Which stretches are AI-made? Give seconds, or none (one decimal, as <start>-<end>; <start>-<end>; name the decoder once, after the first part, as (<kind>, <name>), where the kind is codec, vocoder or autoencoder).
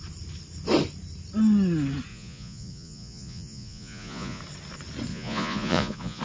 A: 2.1-4.4 (vocoder, Vocos); 5.1-6.2